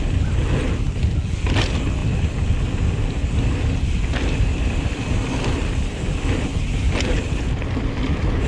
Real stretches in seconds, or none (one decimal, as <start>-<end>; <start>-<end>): 0.0-8.5